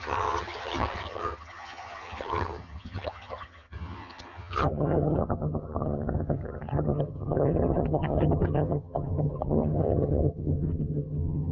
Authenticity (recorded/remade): remade